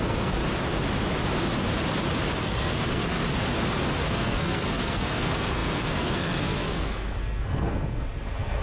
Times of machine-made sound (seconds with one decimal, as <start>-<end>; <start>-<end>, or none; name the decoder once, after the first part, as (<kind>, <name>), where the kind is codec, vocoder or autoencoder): 0.0-0.4 (codec, SNAC); 2.4-3.2; 4.1-8.6